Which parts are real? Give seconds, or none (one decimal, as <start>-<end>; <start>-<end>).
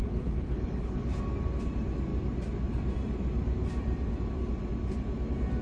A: 1.2-5.6